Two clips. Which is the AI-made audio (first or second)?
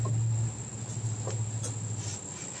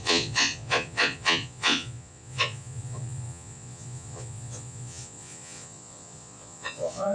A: second